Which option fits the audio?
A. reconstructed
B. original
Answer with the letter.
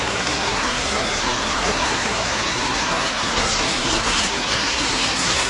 A